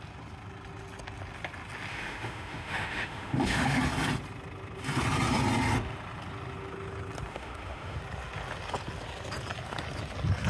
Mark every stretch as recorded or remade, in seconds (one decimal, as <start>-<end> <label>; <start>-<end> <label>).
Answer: 0.0-1.9 recorded; 1.9-3.8 remade; 3.8-7.3 recorded; 7.3-8.0 remade; 8.0-10.5 recorded